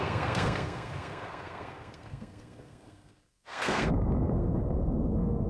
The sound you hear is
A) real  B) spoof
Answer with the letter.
B